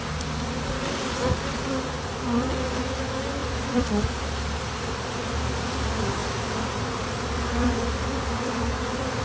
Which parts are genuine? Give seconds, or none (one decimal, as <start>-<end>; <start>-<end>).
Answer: 0.0-3.4; 5.4-6.2